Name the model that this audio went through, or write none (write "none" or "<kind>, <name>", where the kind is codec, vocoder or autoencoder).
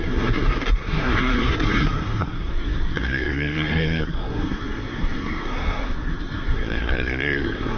codec, SNAC